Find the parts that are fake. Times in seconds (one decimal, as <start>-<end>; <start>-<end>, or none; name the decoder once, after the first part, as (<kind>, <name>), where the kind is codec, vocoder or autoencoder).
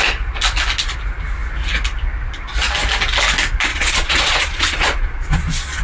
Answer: 3.7-5.8 (vocoder, Vocos)